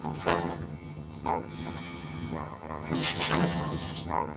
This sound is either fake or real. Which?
fake